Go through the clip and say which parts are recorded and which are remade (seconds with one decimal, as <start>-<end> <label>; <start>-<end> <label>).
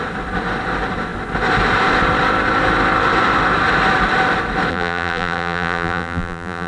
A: 0.0-4.7 recorded; 4.7-6.7 remade